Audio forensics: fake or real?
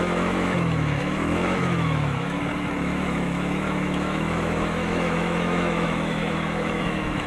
fake